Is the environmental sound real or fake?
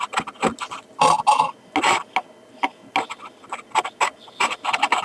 real